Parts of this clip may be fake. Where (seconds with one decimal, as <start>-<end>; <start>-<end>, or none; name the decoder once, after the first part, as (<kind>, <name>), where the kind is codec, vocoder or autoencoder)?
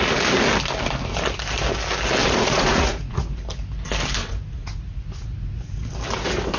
2.2-3.3 (vocoder, Vocos); 4.2-5.9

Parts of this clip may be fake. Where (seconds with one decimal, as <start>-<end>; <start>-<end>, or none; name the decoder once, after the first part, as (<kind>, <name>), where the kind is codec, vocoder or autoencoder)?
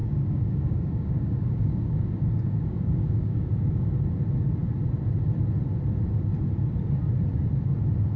0.0-3.9 (codec, DAC)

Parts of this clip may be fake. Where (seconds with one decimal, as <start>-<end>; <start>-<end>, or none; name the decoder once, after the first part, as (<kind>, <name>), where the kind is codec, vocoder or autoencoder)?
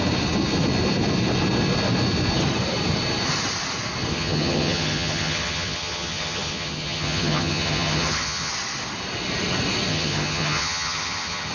4.1-8.5 (vocoder, HiFi-GAN); 9.9-11.5